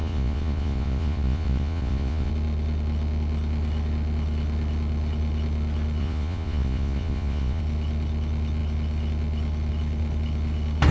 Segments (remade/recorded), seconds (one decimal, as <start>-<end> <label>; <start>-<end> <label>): 0.0-2.3 remade; 2.3-6.0 recorded; 6.0-7.6 remade; 7.6-10.9 recorded